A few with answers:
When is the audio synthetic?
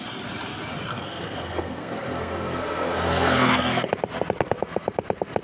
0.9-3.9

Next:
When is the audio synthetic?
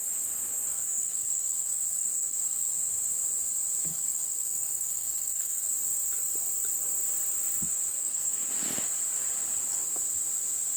0.7-2.7; 3.9-5.7; 7.9-8.5